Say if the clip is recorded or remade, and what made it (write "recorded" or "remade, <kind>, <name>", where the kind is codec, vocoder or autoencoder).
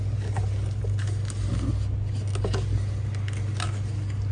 recorded